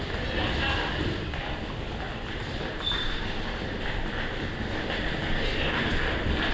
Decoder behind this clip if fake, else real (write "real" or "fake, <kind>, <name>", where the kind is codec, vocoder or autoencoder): real